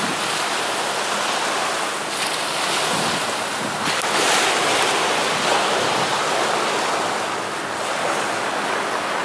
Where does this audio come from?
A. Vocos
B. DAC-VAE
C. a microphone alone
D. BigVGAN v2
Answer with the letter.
C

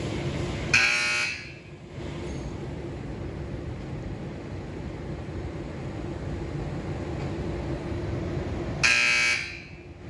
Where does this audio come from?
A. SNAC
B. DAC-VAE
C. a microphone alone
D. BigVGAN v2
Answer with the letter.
C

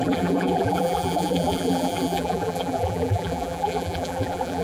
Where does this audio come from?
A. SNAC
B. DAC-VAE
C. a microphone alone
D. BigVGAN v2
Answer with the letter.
D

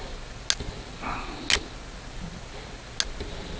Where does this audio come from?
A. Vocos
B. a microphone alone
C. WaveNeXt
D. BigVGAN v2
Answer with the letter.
B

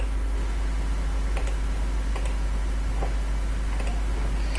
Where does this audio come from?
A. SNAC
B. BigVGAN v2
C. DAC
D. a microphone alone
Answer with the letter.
D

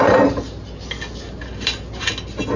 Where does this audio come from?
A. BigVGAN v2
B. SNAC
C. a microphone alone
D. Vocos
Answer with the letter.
C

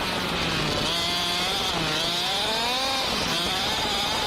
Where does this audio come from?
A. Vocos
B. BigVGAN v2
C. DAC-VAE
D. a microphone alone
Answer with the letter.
D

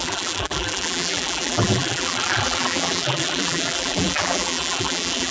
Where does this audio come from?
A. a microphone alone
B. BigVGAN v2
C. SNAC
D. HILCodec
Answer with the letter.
B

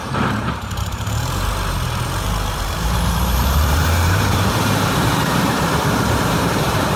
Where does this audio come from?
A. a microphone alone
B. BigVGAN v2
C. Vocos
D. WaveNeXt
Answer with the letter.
B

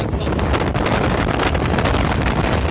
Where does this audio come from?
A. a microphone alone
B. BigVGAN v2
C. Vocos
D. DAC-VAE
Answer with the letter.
A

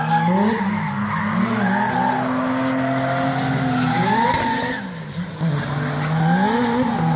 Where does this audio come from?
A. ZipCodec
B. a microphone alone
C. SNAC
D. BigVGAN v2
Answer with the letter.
B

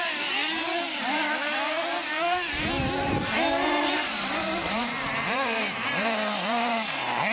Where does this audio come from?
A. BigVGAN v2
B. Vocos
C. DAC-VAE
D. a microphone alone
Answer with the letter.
A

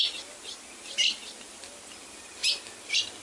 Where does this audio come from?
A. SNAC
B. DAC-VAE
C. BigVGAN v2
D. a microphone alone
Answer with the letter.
D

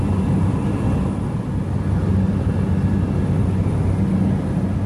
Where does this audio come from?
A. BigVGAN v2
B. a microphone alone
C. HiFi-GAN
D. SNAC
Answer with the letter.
B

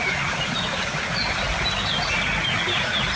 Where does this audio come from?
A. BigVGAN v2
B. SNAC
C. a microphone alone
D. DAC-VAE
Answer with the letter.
C